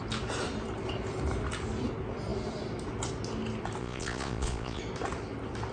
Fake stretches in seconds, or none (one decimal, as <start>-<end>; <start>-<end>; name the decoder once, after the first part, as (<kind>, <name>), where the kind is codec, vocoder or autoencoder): 3.8-4.8 (vocoder, Vocos)